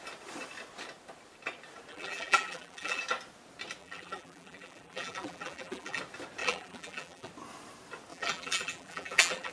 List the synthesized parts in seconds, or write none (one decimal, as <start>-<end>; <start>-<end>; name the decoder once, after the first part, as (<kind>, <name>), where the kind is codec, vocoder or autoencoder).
1.9-3.0 (vocoder, BigVGAN v2); 3.8-6.0; 6.4-7.3; 8.1-9.5